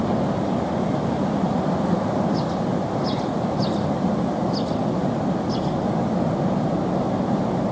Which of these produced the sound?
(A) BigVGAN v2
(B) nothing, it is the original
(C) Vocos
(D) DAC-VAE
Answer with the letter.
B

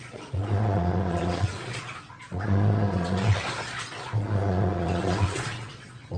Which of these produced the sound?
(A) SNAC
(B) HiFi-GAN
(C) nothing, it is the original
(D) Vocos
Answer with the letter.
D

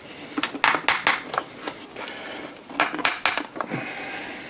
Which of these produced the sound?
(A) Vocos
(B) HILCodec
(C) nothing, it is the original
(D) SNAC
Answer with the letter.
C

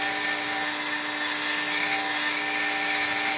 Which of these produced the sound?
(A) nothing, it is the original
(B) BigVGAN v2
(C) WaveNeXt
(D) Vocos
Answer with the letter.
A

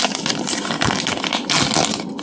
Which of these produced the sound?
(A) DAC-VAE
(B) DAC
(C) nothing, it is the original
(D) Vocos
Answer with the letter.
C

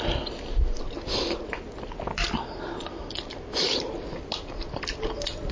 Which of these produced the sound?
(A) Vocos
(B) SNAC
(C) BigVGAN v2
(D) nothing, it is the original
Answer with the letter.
D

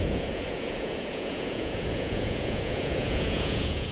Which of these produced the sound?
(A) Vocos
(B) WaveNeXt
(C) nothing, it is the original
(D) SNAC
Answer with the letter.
A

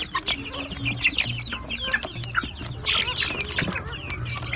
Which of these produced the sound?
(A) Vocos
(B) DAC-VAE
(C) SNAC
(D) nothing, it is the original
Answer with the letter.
D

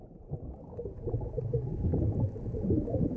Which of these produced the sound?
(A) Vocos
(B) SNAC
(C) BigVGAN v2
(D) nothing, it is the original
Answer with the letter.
D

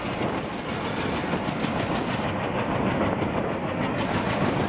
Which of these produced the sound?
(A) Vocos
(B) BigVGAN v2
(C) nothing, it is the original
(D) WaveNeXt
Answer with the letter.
C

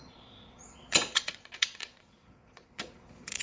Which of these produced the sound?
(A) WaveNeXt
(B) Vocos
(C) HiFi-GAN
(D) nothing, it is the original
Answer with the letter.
B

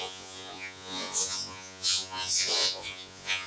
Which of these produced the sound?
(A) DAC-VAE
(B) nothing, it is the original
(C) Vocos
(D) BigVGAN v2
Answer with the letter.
C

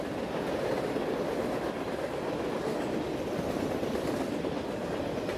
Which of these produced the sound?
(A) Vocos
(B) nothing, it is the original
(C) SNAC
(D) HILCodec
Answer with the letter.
B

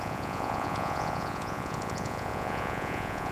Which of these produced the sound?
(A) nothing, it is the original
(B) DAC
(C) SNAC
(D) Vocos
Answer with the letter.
D